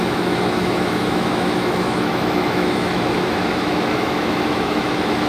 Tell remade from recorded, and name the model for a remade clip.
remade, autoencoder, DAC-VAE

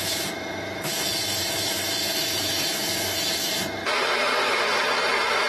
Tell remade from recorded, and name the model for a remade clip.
remade, autoencoder, DAC-VAE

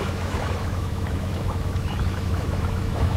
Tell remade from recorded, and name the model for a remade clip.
remade, autoencoder, DAC-VAE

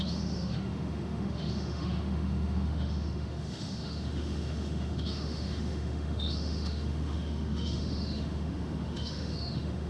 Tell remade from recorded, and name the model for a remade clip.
remade, autoencoder, DAC-VAE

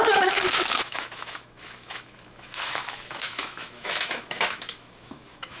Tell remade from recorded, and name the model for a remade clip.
remade, autoencoder, DAC-VAE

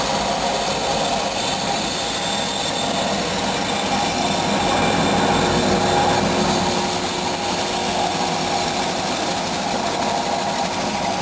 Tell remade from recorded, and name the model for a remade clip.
recorded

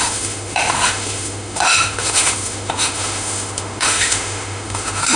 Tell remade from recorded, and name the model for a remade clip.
remade, autoencoder, DAC-VAE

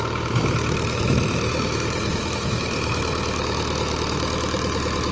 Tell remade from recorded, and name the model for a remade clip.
remade, autoencoder, DAC-VAE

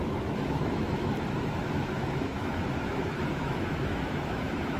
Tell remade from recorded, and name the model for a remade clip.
remade, autoencoder, DAC-VAE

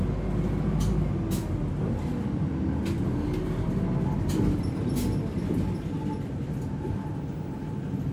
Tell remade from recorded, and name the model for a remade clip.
recorded